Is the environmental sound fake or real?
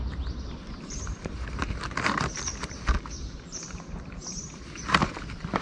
fake